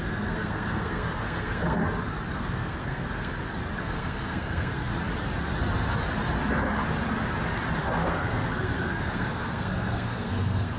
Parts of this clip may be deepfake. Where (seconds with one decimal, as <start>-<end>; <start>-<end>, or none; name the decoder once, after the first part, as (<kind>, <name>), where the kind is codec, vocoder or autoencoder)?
0.0-1.8 (codec, SNAC); 2.3-3.3; 3.8-4.9; 7.8-10.8